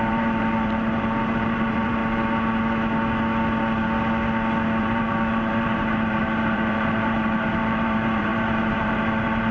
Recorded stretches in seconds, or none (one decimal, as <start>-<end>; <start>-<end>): 2.0-4.8